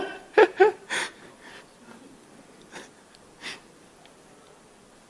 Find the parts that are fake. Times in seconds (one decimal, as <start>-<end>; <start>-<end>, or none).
0.0-5.1